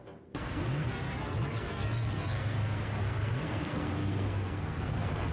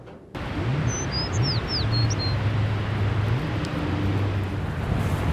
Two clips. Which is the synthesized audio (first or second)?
first